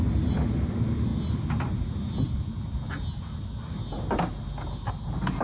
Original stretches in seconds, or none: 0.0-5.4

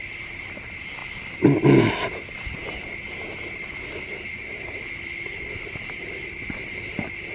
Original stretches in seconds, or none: 0.0-1.0; 2.1-7.3